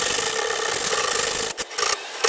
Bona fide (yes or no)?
yes